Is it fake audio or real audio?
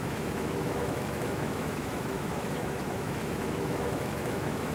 fake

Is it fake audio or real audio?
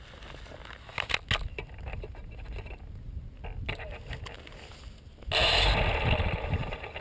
real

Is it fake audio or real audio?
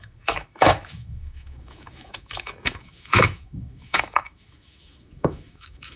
fake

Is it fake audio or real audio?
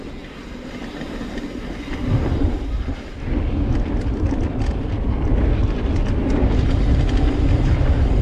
real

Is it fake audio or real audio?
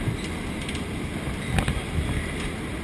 real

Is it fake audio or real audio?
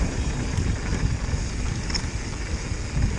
real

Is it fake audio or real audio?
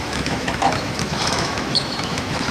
fake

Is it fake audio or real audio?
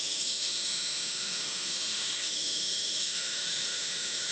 fake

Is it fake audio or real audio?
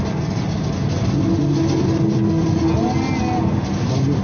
real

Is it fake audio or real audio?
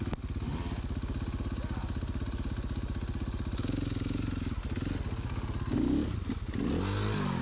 real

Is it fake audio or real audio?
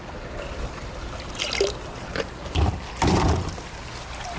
real